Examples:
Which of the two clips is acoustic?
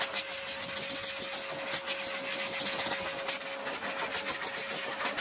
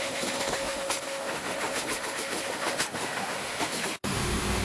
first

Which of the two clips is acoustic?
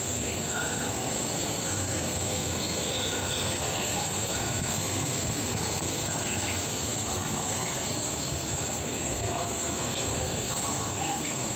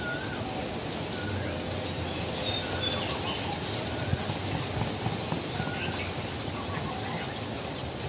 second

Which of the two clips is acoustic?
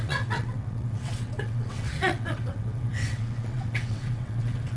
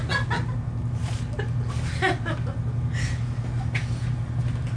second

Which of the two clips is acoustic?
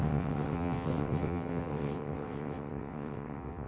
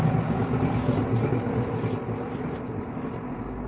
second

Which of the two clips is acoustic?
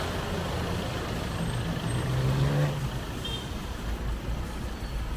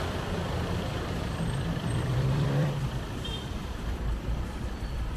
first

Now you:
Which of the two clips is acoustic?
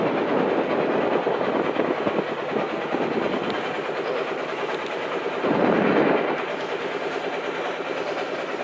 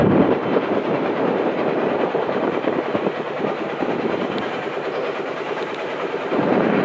first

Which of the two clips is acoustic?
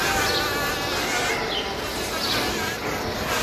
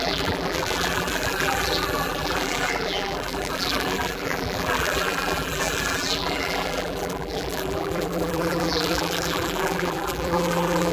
first